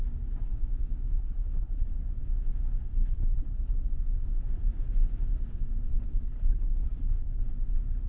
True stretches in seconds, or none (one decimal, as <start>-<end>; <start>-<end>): 0.0-1.2; 1.9-2.9; 3.7-5.9; 7.4-8.1